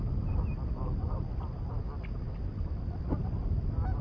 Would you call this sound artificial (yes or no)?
no